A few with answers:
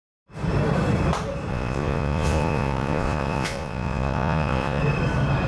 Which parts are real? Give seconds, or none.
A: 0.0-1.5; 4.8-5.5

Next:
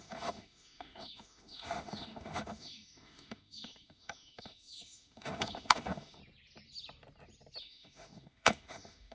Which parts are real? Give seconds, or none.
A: 6.2-7.6